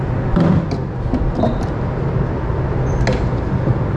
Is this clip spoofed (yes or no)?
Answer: no